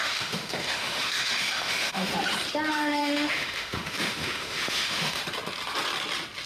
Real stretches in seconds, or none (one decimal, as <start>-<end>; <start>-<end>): 2.1-2.7; 5.2-6.5